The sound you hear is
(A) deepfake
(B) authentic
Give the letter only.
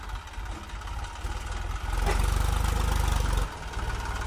B